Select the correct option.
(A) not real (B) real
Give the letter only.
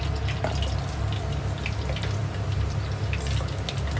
B